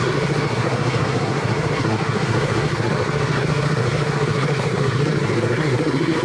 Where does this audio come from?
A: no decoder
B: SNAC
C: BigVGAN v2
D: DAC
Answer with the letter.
B